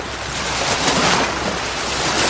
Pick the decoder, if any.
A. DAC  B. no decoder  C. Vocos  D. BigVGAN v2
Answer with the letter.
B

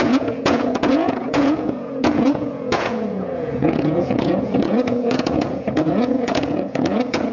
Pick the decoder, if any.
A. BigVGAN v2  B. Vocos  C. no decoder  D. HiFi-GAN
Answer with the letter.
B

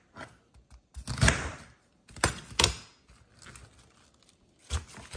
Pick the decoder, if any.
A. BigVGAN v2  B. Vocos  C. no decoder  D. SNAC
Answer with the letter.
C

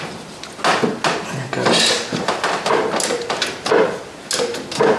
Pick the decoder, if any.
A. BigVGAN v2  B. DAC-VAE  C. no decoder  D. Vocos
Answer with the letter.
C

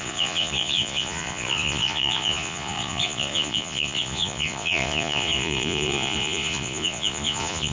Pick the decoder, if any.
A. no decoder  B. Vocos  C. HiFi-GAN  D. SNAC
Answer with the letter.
B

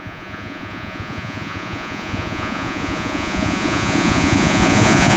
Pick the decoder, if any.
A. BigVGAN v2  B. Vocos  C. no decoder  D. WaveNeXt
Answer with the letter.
B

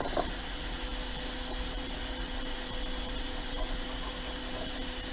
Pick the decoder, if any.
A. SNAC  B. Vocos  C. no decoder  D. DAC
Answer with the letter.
C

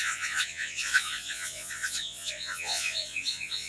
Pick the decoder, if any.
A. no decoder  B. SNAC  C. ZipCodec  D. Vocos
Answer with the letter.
D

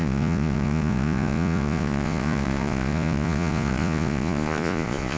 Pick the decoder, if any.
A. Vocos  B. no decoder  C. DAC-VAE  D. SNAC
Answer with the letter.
A